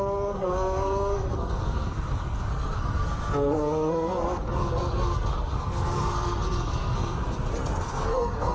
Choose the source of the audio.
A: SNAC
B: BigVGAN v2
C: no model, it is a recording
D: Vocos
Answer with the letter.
A